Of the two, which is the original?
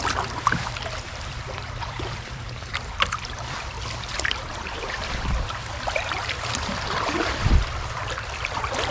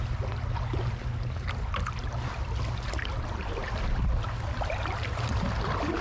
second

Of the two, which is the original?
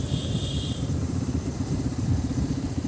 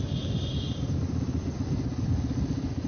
second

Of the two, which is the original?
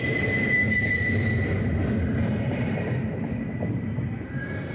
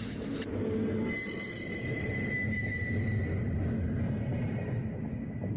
second